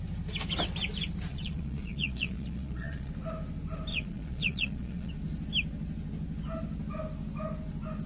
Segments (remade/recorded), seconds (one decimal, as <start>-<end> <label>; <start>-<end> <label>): 0.0-1.3 recorded; 1.3-3.1 remade; 3.1-3.9 recorded; 3.9-5.1 remade; 5.1-8.1 recorded